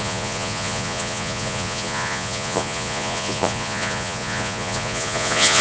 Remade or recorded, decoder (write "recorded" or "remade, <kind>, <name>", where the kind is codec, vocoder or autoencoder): remade, vocoder, Vocos